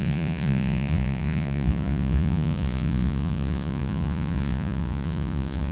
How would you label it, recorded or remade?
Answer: remade